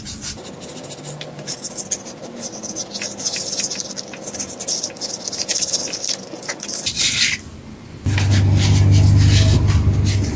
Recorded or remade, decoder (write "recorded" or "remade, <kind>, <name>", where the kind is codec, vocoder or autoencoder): recorded